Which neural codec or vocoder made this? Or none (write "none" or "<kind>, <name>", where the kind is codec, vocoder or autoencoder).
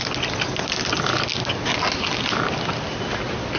none